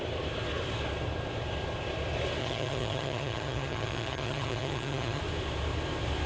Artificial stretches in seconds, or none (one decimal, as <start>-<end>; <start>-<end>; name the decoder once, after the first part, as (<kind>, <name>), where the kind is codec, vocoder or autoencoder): 2.4-5.2 (vocoder, HiFi-GAN)